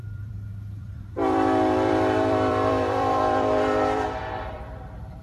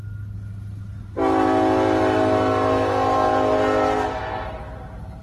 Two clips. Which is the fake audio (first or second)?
first